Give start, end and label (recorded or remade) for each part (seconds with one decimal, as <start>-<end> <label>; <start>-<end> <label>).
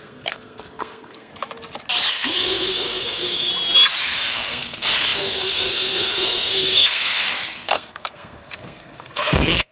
0.0-1.3 remade; 1.3-2.1 recorded; 2.1-3.5 remade; 3.5-4.0 recorded; 4.0-9.7 remade